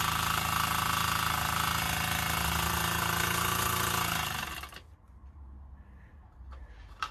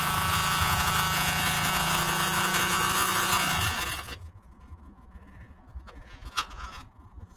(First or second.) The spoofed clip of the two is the second